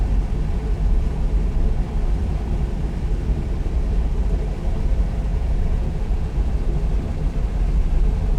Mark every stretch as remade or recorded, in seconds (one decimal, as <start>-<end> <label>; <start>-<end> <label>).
0.0-5.3 recorded; 5.3-6.5 remade; 6.5-8.4 recorded